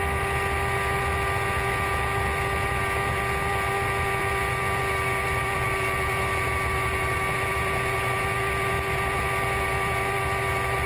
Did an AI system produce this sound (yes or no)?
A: no